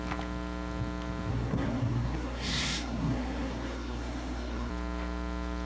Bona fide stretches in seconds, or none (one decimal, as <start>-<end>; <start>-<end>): 0.0-1.3; 4.7-5.7